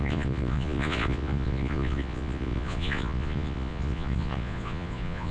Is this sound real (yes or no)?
no